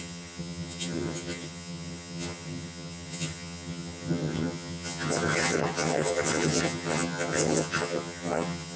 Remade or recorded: remade